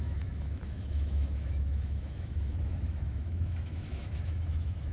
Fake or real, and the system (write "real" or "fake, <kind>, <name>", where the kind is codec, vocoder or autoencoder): fake, autoencoder, DAC-VAE